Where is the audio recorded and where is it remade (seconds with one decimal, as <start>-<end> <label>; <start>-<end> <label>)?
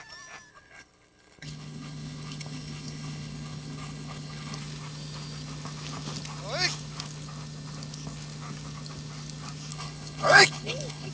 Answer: 0.0-0.5 recorded; 0.5-4.6 remade; 4.6-9.7 recorded; 9.7-11.1 remade